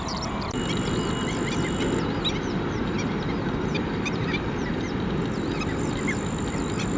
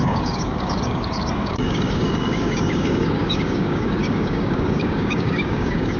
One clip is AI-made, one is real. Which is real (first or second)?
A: first